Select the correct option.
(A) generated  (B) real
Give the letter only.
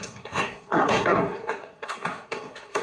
A